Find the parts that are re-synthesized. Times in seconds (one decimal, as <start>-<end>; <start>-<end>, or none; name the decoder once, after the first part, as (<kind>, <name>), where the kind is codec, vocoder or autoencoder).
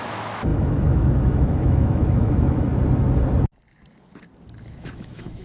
0.0-2.7 (autoencoder, DAC-VAE); 4.7-5.4